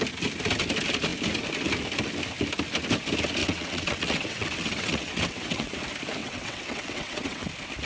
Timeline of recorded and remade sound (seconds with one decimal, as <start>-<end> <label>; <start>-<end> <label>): 0.0-3.4 recorded; 3.4-5.7 remade; 5.7-6.2 recorded; 6.2-7.5 remade; 7.5-7.9 recorded